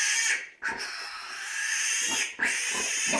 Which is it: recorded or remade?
recorded